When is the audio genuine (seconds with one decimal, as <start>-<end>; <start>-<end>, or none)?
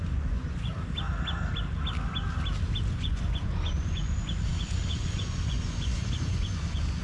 0.7-2.9